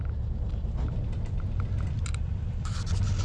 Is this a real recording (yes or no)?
yes